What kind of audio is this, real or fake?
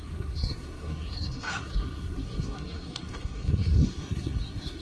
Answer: fake